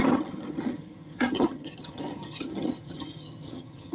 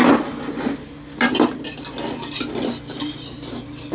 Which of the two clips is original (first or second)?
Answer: second